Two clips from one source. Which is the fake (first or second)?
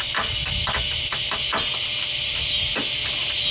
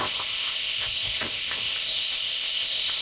second